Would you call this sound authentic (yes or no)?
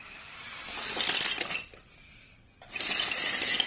yes